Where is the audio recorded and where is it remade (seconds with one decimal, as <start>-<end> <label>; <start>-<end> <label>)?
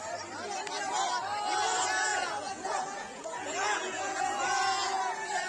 0.0-2.1 recorded; 2.1-5.0 remade; 5.0-5.5 recorded